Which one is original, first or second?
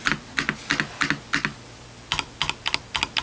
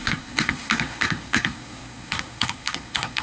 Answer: first